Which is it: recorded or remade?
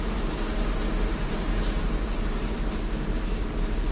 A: remade